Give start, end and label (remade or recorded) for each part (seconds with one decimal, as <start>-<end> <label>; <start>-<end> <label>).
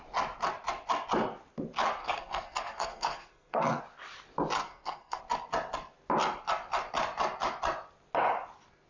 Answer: 0.0-2.0 recorded; 2.0-3.8 remade; 3.8-4.6 recorded; 4.6-5.2 remade; 5.2-8.9 recorded